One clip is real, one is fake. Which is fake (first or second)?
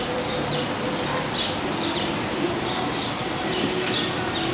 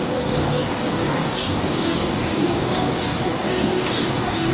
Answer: second